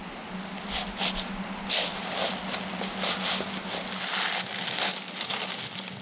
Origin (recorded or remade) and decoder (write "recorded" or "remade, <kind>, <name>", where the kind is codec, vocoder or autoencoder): recorded